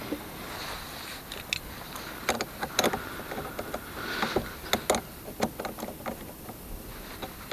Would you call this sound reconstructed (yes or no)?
no